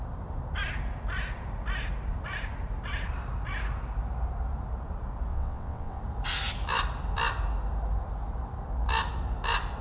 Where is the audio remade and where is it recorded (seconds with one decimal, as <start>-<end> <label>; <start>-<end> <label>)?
0.0-5.3 recorded; 5.3-6.0 remade; 6.0-9.8 recorded